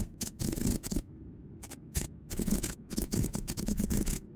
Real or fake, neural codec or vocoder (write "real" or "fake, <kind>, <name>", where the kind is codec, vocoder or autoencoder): fake, codec, SNAC